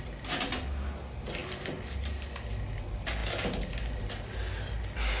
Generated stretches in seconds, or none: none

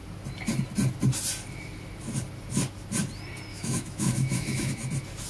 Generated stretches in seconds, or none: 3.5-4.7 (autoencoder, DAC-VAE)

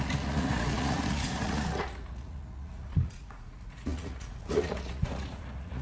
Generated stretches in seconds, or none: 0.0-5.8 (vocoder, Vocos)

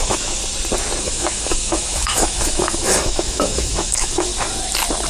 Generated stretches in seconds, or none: 0.0-0.4 (autoencoder, DAC-VAE); 1.0-4.3

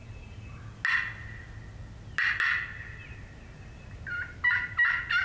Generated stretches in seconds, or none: none

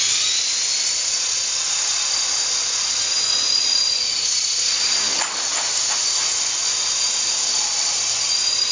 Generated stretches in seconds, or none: none